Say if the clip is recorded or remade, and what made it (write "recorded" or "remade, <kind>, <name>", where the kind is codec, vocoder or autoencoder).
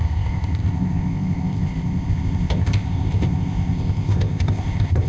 remade, codec, ZipCodec